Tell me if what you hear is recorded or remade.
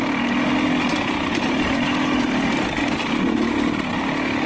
recorded